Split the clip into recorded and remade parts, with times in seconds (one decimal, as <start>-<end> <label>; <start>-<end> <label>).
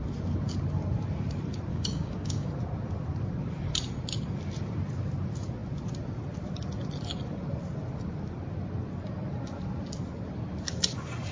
0.0-1.7 recorded; 1.7-2.5 remade; 2.5-11.3 recorded